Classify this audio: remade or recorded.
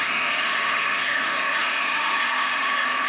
remade